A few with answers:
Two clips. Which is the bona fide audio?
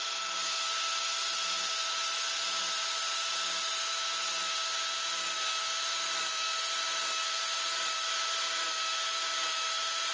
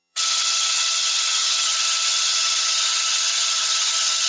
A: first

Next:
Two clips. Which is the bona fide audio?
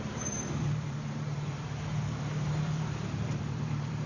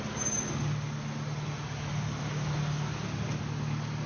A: second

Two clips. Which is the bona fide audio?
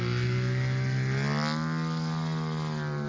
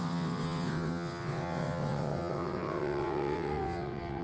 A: first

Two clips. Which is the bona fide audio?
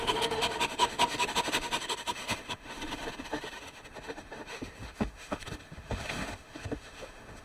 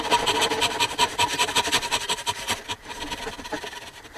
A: second